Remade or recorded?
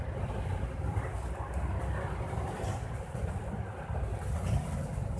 recorded